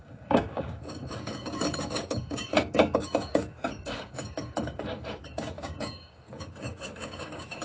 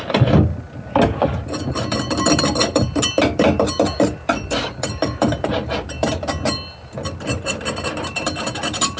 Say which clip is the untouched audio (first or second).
second